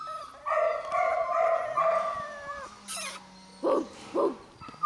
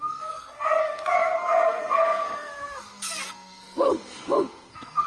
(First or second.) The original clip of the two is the first